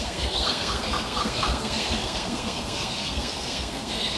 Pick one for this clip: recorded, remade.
remade